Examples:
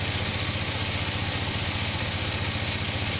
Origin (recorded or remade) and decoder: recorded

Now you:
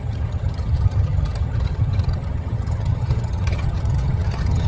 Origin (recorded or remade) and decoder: remade, vocoder, HiFi-GAN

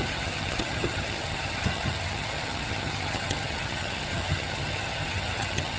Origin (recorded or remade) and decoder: remade, vocoder, HiFi-GAN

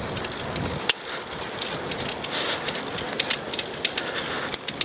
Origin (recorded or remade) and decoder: recorded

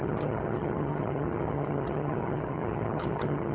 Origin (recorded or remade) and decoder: remade, vocoder, HiFi-GAN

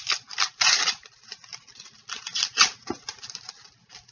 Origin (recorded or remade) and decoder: recorded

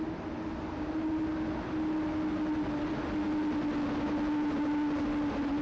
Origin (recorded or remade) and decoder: recorded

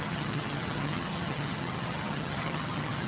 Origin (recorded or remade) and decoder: remade, vocoder, HiFi-GAN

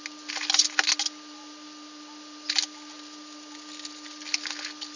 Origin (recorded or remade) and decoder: recorded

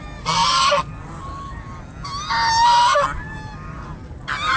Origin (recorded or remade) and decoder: recorded